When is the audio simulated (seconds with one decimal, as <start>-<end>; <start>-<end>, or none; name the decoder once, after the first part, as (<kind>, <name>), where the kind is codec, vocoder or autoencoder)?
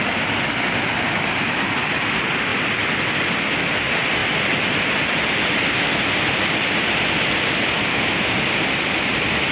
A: 0.0-2.5 (vocoder, BigVGAN v2); 3.2-4.2; 8.9-9.5